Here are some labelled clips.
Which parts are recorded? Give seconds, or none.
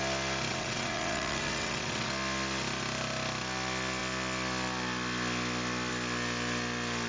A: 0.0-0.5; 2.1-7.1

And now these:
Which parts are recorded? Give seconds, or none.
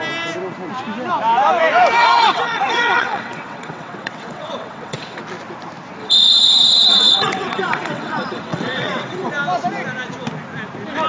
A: 0.0-2.0; 5.2-6.0; 9.3-11.1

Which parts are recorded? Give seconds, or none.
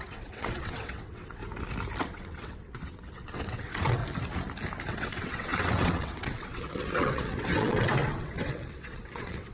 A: 1.4-2.0; 4.0-4.9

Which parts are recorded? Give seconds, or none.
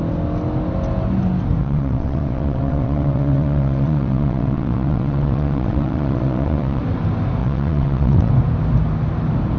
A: 0.0-1.6; 6.8-7.4; 8.3-9.6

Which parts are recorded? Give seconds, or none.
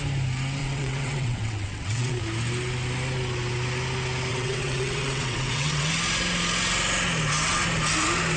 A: 0.0-0.6; 2.2-4.3; 5.9-8.4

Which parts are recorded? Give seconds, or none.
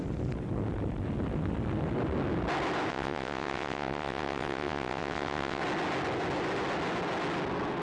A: 0.0-2.9; 5.6-7.8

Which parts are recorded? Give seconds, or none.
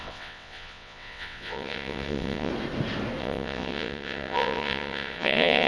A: 2.5-3.2